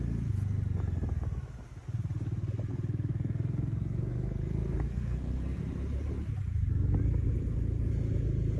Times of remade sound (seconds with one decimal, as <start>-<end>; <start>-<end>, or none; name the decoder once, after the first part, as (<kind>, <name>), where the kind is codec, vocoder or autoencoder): 3.1-5.6 (codec, SNAC)